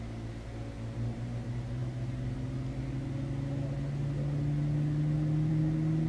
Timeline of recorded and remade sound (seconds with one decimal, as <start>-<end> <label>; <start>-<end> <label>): 0.0-6.1 recorded